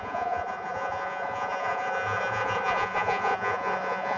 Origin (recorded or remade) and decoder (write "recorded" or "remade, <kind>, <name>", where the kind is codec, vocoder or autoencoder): remade, vocoder, Vocos